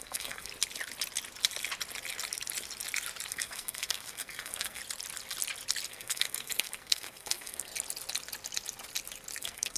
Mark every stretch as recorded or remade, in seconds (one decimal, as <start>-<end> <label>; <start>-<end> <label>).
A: 0.0-0.5 remade; 0.5-3.3 recorded; 3.3-4.8 remade; 4.8-5.9 recorded; 5.9-7.7 remade; 7.7-9.4 recorded; 9.4-9.8 remade